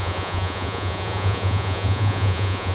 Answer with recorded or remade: remade